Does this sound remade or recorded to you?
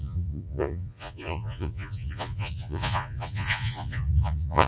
remade